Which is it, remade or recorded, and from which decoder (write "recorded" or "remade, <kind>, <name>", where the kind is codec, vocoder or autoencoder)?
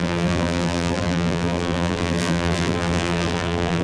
remade, vocoder, BigVGAN v2